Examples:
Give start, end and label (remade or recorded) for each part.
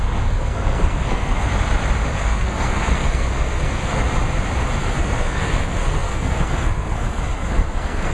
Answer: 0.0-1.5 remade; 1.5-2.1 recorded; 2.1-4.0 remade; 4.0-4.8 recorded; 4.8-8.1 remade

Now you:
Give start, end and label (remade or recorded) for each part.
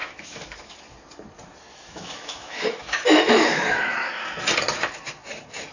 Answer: 0.0-0.8 remade; 0.8-1.7 recorded; 1.7-4.1 remade; 4.1-5.7 recorded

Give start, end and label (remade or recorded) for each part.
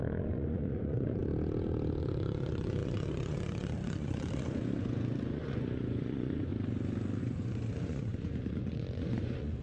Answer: 0.0-1.2 remade; 1.2-2.0 recorded; 2.0-6.5 remade; 6.5-7.2 recorded; 7.2-9.6 remade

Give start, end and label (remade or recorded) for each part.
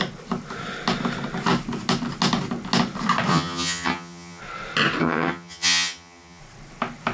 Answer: 0.0-3.3 recorded; 3.3-4.4 remade; 4.4-5.0 recorded; 5.0-6.4 remade; 6.4-7.1 recorded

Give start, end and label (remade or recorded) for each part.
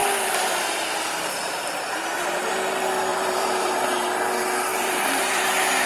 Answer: 0.0-1.4 recorded; 1.4-2.4 remade; 2.4-3.1 recorded; 3.1-3.7 remade; 3.7-4.7 recorded; 4.7-5.4 remade; 5.4-5.9 recorded